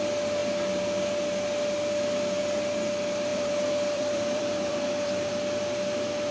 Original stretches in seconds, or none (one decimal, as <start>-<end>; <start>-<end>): 0.0-3.3; 5.3-6.3